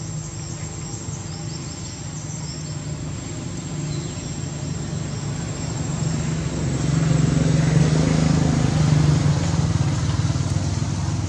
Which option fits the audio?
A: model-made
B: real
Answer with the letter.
B